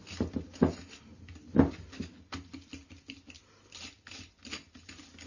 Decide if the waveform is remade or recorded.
recorded